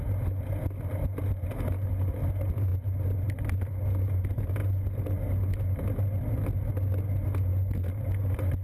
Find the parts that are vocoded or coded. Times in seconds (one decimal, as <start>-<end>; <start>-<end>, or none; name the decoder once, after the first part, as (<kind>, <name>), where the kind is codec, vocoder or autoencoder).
none

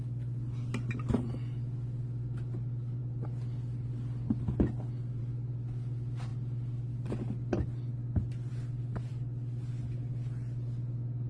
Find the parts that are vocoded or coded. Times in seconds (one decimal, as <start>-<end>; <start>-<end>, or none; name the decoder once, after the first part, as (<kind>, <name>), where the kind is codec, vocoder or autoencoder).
none

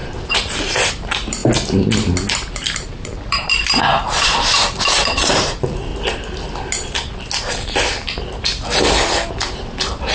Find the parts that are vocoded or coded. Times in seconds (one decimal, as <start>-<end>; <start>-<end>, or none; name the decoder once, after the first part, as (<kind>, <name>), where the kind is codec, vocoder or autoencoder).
0.0-1.4 (vocoder, BigVGAN v2); 2.5-5.9; 9.3-10.1